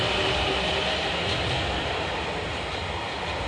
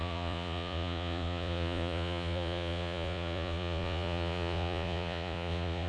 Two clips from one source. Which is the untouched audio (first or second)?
first